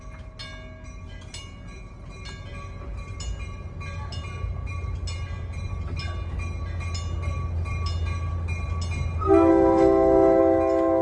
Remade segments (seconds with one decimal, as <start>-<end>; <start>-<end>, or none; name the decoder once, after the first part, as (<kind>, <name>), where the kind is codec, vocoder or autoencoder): 9.5-10.4 (autoencoder, DAC-VAE)